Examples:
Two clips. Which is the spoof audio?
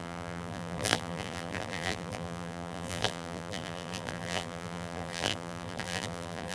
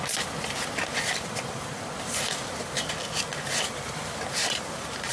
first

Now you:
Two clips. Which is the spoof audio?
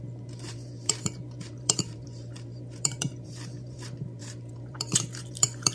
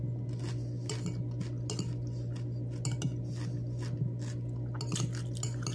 first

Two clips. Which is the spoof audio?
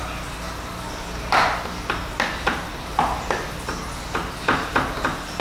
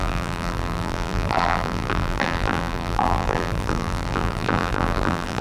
second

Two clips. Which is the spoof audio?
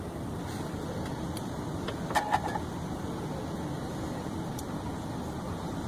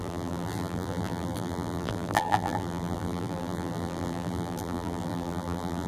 second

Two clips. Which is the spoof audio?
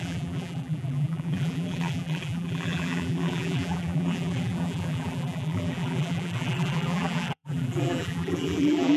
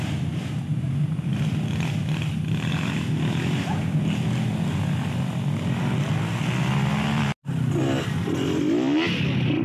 first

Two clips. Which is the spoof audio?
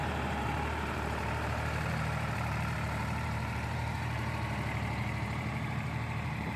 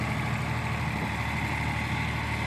first